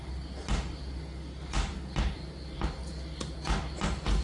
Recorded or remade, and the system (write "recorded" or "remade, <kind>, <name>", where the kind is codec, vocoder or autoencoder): recorded